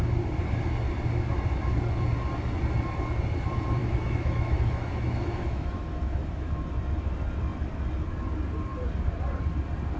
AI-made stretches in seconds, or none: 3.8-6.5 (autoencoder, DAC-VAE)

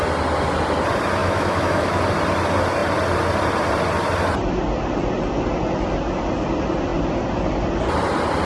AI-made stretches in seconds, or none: 1.2-2.0 (autoencoder, DAC-VAE)

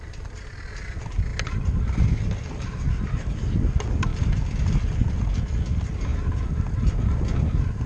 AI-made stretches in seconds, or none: none

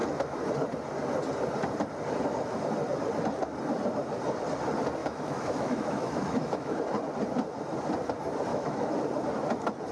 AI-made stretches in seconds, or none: 5.0-6.8 (autoencoder, DAC-VAE); 8.5-9.0